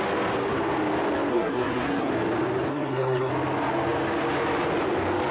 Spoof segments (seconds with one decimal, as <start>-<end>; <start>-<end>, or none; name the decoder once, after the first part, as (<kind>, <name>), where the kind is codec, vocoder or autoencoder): 1.3-2.1 (codec, SNAC); 2.7-3.3